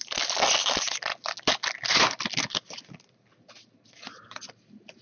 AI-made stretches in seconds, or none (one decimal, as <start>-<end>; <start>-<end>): none